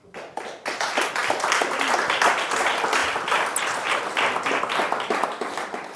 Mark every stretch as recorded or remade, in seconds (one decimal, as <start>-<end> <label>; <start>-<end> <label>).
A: 0.0-6.0 recorded